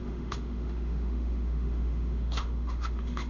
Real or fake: fake